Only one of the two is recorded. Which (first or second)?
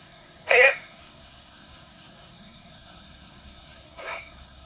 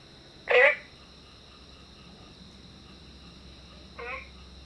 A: second